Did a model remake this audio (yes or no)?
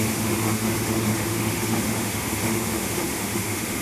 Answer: yes